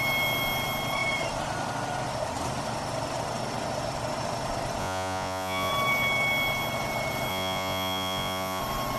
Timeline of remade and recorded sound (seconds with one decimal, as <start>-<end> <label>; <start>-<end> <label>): 0.0-4.8 recorded; 4.8-5.7 remade; 5.7-7.3 recorded; 7.3-8.6 remade; 8.6-9.0 recorded